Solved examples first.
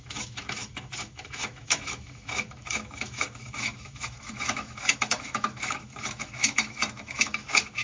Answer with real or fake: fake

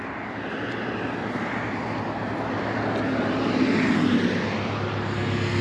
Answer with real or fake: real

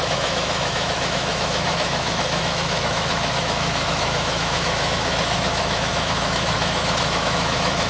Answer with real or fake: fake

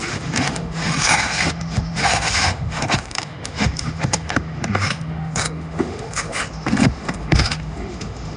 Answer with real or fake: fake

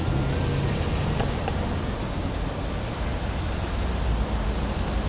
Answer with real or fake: real